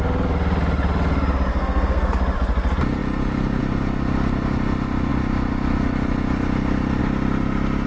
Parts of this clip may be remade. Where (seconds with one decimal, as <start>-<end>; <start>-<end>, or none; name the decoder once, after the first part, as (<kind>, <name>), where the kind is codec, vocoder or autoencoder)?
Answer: 1.5-2.1 (codec, SNAC)